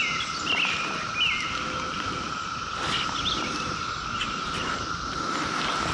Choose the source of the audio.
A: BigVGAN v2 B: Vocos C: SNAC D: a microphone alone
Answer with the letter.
D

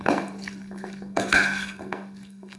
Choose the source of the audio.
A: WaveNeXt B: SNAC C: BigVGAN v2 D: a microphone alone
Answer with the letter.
B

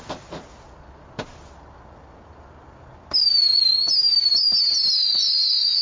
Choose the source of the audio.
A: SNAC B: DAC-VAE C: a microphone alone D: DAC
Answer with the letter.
C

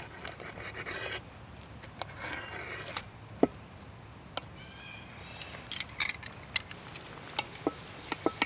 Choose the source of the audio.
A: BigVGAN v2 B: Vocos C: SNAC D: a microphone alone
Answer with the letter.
D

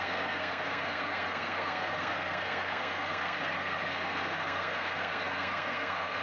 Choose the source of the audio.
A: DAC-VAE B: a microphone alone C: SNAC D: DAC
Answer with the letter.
C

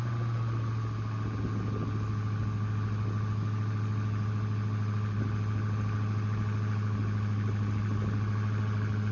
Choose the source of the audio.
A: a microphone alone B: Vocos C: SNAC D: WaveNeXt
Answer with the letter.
A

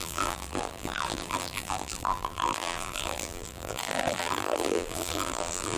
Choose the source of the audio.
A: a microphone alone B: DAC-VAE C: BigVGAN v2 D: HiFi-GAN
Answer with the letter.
C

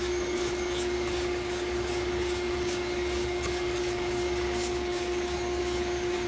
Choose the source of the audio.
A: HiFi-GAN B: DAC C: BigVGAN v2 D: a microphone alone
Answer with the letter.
B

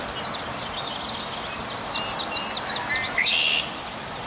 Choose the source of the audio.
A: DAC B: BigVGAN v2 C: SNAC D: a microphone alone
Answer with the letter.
D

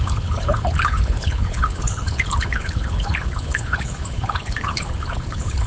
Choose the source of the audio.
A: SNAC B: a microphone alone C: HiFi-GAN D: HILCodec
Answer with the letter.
D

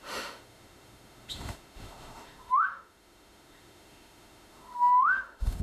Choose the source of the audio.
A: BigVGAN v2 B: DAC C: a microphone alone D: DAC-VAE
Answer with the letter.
D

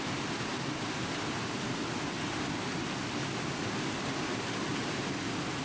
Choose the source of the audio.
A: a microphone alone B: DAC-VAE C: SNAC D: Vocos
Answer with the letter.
A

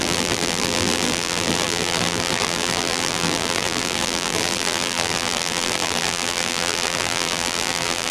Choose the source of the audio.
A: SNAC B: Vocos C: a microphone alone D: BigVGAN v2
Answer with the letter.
D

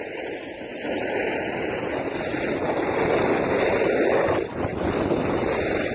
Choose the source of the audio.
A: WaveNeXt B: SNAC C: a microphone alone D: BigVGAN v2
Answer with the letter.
C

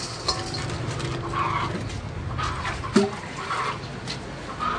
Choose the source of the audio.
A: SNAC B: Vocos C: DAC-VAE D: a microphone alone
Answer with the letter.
D